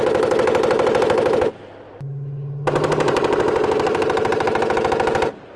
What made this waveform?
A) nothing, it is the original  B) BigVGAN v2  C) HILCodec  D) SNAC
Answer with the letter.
A